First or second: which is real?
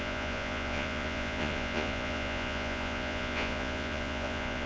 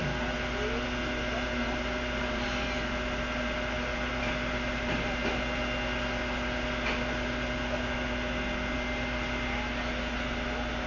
second